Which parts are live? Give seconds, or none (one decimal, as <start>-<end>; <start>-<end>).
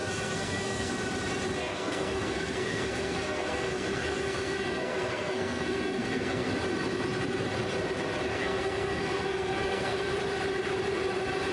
0.9-1.7; 6.5-8.3; 10.1-11.5